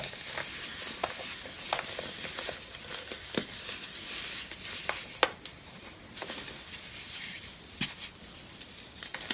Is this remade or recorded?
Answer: recorded